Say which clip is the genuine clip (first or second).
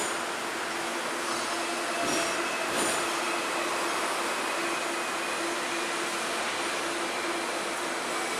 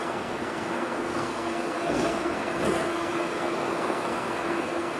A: first